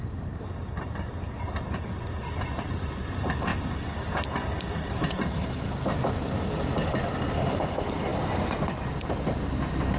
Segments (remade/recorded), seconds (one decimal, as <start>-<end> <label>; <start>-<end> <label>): 0.0-10.0 recorded